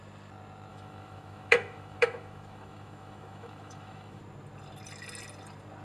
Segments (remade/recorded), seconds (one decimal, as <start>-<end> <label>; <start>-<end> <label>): 0.0-0.7 recorded; 0.7-4.2 remade; 4.2-5.8 recorded